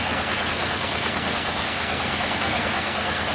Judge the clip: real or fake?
fake